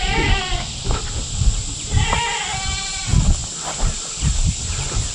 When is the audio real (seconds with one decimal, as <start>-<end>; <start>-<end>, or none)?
0.0-5.1